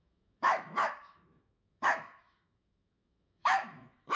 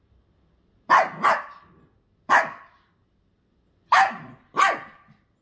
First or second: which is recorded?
second